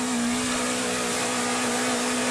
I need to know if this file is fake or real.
real